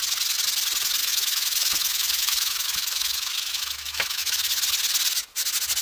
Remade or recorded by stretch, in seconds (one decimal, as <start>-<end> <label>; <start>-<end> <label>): 0.0-1.0 recorded; 1.0-4.5 remade; 4.5-5.8 recorded